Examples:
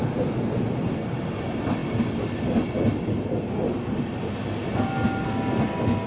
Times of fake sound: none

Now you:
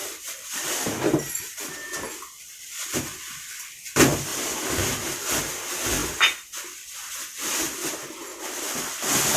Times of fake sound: 0.0-3.5; 4.3-5.0

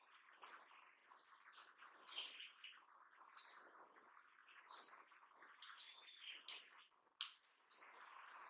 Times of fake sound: 1.0-3.4

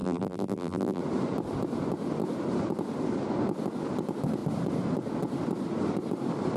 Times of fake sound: 0.0-1.0